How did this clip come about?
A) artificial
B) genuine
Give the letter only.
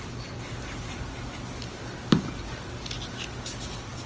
B